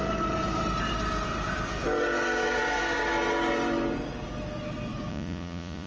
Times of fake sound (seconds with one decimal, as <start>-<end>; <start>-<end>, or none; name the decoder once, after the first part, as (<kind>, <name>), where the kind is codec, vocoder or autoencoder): 5.1-5.9 (vocoder, Vocos)

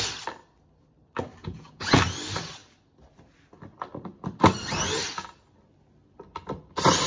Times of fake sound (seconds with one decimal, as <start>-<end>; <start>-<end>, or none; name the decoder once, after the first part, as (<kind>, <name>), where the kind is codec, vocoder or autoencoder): 1.4-2.0 (vocoder, Vocos)